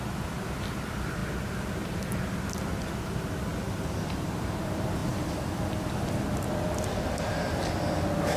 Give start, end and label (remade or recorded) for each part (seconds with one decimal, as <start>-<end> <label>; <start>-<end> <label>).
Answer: 0.0-3.5 recorded; 3.5-4.6 remade; 4.6-8.4 recorded